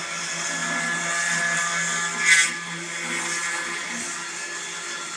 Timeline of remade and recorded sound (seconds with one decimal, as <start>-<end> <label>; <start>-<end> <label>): 0.0-5.2 recorded